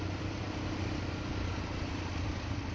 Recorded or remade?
remade